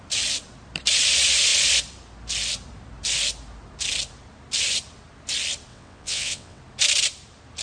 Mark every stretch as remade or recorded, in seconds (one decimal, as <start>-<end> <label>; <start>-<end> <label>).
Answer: 0.0-5.7 recorded; 5.7-6.6 remade; 6.6-7.6 recorded